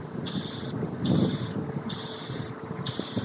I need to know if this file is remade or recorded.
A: recorded